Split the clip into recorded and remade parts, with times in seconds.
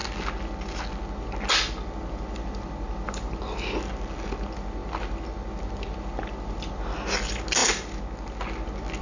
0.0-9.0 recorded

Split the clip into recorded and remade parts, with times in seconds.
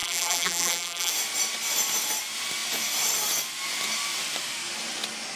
0.0-1.1 remade; 1.1-5.4 recorded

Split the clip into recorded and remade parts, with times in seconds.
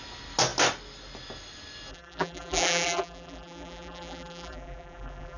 0.0-1.9 recorded; 1.9-5.4 remade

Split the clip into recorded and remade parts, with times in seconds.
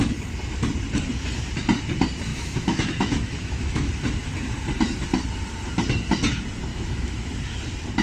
0.0-2.3 recorded; 2.3-3.9 remade; 3.9-6.7 recorded; 6.7-7.3 remade; 7.3-8.0 recorded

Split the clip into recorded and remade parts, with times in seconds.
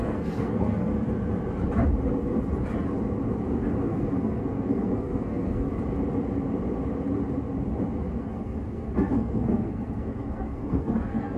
0.0-0.9 remade; 0.9-3.8 recorded; 3.8-5.7 remade; 5.7-8.2 recorded; 8.2-11.4 remade